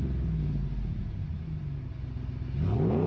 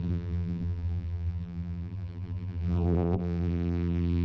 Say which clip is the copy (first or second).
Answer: second